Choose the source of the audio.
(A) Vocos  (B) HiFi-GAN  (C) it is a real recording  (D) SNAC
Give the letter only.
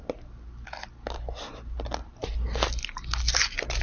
C